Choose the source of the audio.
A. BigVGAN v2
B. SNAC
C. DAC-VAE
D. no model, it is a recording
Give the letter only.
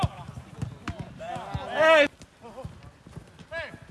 D